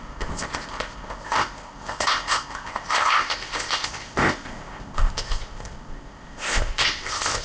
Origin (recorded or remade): remade